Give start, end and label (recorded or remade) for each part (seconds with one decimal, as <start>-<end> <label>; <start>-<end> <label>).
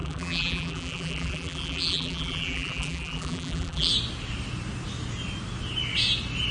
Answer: 0.0-3.9 remade; 3.9-6.5 recorded